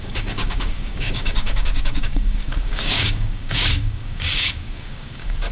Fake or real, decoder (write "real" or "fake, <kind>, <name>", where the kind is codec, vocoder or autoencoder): fake, codec, DAC